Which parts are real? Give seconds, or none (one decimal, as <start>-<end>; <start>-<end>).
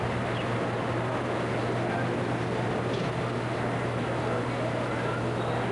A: 0.0-5.7